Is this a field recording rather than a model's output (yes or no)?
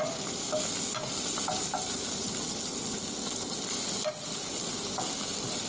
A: yes